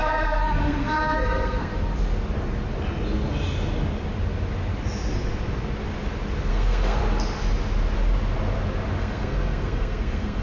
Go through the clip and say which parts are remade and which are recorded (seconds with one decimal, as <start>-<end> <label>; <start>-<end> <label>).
0.0-1.7 remade; 1.7-6.5 recorded; 6.5-7.0 remade; 7.0-9.0 recorded; 9.0-10.4 remade